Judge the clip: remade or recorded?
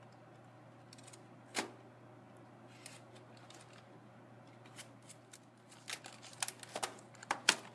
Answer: recorded